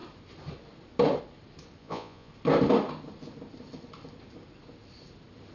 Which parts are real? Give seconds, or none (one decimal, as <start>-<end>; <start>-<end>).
0.0-1.8; 2.3-5.5